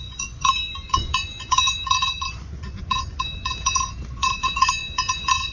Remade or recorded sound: remade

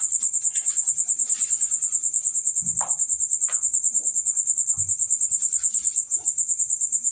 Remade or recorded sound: remade